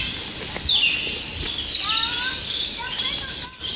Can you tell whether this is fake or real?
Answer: real